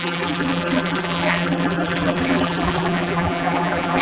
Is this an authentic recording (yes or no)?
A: no